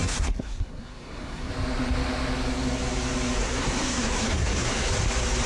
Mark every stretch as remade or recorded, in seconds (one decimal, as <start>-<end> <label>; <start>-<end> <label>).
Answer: 0.0-1.5 remade; 1.5-3.4 recorded; 3.4-4.9 remade; 4.9-5.5 recorded